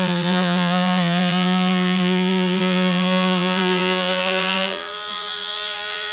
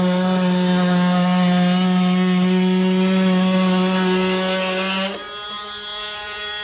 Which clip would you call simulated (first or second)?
first